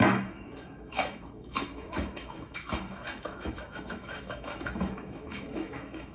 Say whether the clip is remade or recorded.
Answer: remade